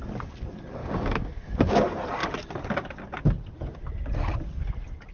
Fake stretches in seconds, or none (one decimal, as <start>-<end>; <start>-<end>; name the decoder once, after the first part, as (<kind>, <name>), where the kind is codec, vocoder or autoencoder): 0.8-1.7 (codec, DAC)